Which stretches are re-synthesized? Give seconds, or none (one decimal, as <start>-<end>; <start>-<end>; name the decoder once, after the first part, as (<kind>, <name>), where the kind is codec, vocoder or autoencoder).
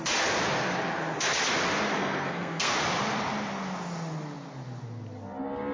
2.0-2.7 (codec, SNAC)